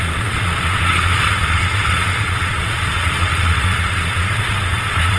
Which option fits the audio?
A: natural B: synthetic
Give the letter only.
B